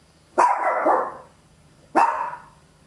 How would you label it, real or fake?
fake